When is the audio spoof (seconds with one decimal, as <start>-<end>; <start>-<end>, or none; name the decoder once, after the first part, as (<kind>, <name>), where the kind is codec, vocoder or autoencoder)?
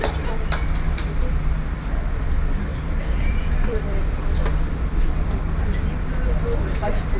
2.7-6.1 (vocoder, BigVGAN v2)